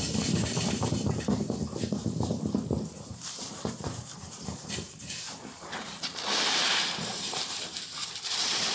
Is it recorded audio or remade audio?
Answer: remade